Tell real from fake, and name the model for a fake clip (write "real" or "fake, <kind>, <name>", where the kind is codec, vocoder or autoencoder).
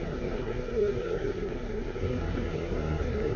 fake, codec, SNAC